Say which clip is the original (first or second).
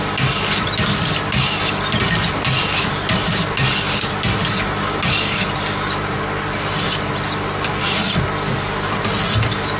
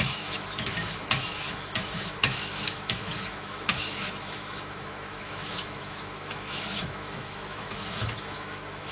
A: first